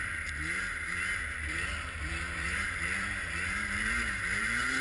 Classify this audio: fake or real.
fake